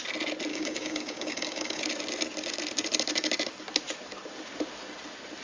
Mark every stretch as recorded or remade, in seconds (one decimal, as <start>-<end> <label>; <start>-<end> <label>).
0.0-0.5 recorded; 0.5-1.8 remade; 1.8-5.4 recorded